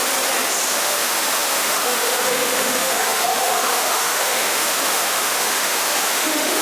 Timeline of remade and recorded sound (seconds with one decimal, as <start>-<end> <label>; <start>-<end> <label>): 0.0-0.8 recorded; 0.8-6.6 remade